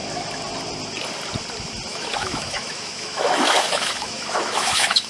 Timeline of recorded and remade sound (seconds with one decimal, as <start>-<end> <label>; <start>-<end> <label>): 0.0-1.9 recorded; 1.9-5.1 remade